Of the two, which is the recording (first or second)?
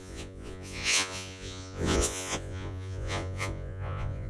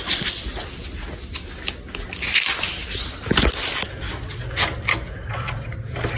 second